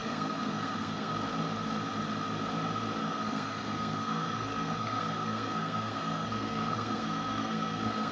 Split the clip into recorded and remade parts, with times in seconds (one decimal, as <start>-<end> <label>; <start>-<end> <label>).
0.0-1.1 remade; 1.1-3.0 recorded; 3.0-8.1 remade